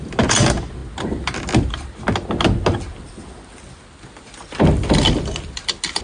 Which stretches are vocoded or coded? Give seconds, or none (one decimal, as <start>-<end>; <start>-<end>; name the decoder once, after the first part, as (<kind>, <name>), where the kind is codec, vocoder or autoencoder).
none